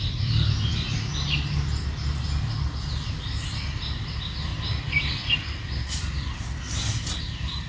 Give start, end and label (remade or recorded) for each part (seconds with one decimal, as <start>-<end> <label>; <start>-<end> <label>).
0.0-0.7 remade; 0.7-3.1 recorded; 3.1-4.5 remade; 4.5-6.9 recorded; 6.9-7.7 remade